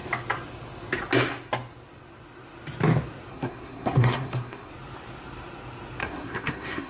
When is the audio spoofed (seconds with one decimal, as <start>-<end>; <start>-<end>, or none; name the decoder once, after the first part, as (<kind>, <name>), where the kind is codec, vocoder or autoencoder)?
3.3-4.7 (codec, SNAC); 6.0-6.9